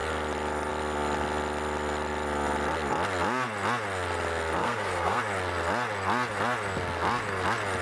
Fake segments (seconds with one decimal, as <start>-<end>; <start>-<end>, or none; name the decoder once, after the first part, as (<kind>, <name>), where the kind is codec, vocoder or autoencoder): 4.6-5.2 (codec, SNAC)